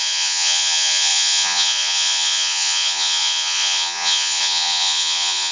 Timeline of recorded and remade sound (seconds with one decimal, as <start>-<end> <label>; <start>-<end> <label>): 0.0-5.5 remade